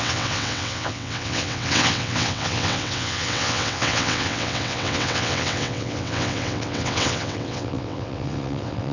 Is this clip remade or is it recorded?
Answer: remade